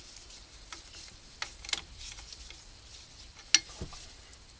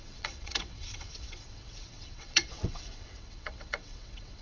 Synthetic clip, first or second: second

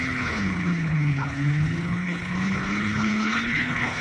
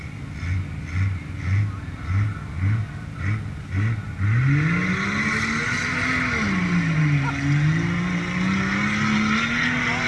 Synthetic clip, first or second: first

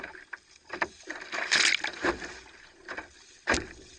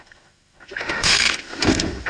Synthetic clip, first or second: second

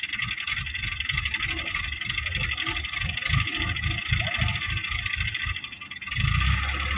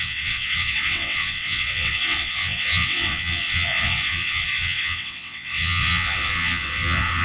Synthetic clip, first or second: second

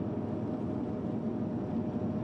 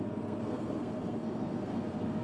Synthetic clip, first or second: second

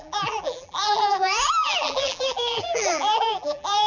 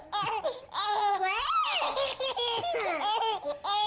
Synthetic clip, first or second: first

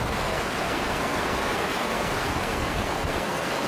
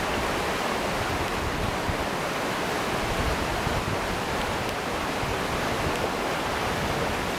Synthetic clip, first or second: first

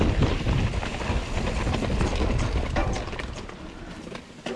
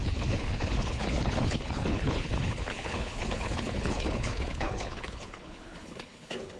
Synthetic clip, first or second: second